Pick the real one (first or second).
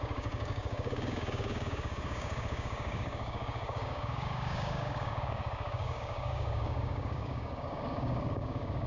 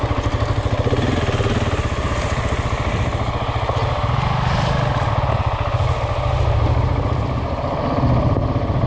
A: second